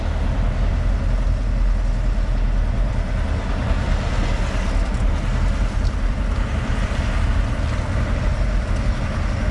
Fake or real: real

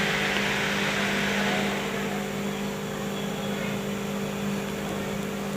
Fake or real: real